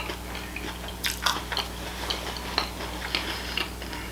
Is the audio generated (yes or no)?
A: no